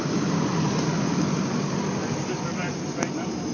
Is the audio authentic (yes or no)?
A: yes